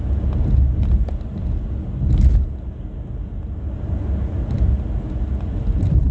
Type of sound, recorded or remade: recorded